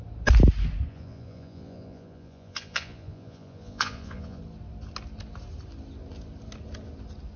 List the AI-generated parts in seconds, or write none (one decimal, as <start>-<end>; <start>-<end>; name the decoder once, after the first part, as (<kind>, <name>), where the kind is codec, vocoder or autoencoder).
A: 0.9-4.4 (vocoder, Vocos)